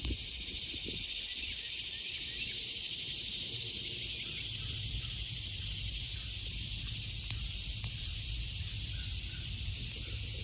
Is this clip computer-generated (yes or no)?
no